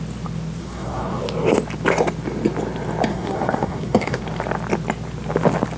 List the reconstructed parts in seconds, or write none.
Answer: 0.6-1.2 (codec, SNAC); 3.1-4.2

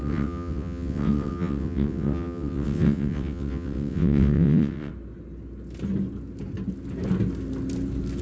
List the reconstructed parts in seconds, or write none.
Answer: 0.0-4.9 (vocoder, WaveNeXt)

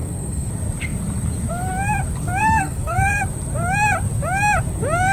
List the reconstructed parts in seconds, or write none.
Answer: 0.0-0.5 (codec, SNAC); 2.4-3.2

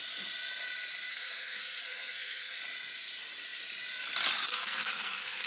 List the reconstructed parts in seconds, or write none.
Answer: 1.1-2.6 (codec, SNAC); 4.5-5.5

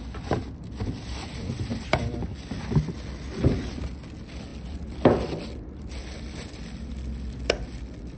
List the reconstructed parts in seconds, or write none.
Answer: none

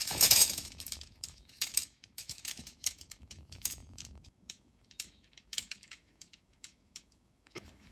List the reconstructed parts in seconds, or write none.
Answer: 0.0-7.9 (autoencoder, DAC-VAE)

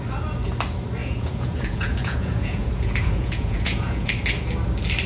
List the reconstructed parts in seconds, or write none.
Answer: 1.0-4.1 (vocoder, Vocos)

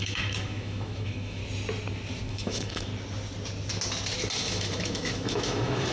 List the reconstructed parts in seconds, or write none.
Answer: 0.0-1.4 (autoencoder, DAC-VAE); 2.3-2.9; 4.4-5.9